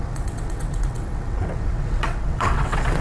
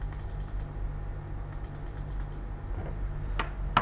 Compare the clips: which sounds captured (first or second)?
second